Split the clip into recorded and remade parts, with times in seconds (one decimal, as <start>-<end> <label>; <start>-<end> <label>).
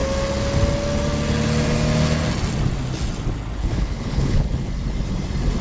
0.0-3.6 recorded; 3.6-4.7 remade; 4.7-5.6 recorded